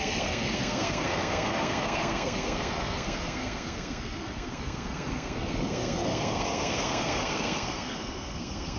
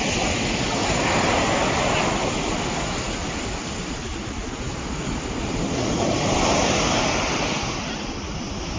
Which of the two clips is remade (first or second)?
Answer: first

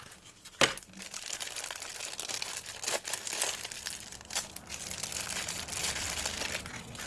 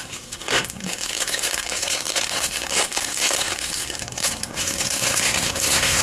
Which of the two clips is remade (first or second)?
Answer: second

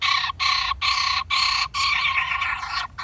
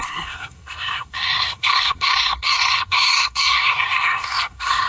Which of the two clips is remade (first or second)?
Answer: second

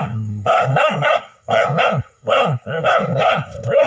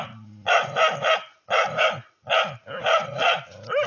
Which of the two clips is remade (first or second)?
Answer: first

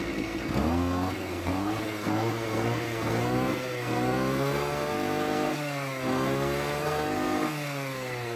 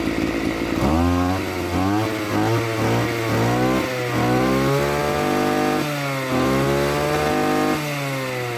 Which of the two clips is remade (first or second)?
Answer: first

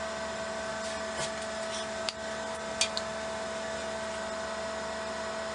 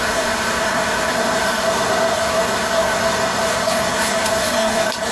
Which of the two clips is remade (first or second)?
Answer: second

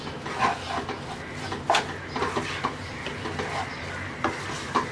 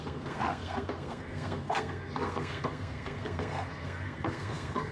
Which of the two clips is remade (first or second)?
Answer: second